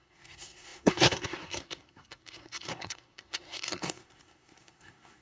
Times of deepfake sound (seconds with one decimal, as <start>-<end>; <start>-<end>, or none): 0.0-5.2